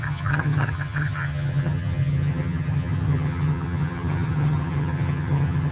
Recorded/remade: remade